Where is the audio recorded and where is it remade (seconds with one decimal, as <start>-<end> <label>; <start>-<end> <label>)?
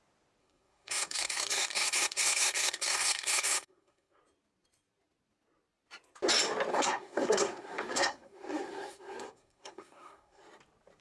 0.0-0.4 recorded; 0.4-4.2 remade; 4.2-6.7 recorded; 6.7-10.4 remade; 10.4-11.0 recorded